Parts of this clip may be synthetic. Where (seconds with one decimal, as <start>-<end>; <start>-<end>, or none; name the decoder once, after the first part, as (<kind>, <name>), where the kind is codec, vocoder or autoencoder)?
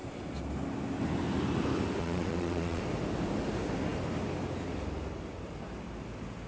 2.0-2.8 (vocoder, Vocos)